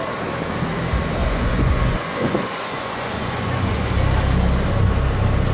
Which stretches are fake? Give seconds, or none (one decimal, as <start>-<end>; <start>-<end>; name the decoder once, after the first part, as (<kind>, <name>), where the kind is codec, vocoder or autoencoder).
1.2-3.9 (vocoder, Vocos)